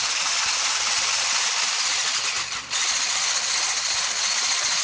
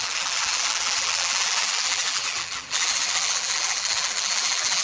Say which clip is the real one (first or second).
first